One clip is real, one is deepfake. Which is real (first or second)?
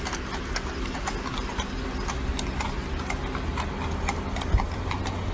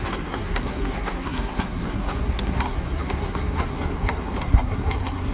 first